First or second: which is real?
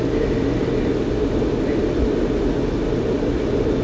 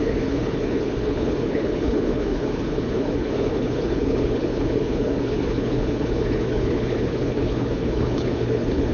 first